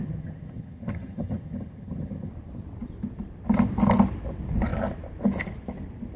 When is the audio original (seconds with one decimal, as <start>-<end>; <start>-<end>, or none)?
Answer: 2.3-6.2